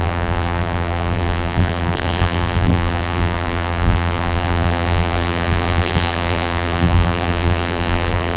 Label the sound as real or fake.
fake